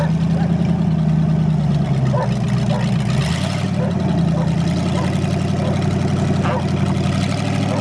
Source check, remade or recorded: recorded